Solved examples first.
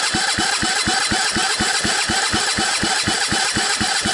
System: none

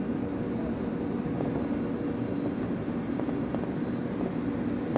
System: none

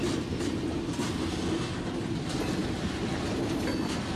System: none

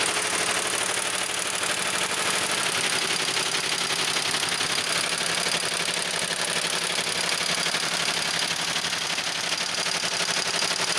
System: none